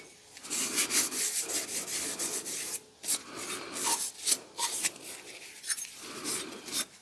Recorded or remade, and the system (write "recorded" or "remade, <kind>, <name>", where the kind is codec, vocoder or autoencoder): recorded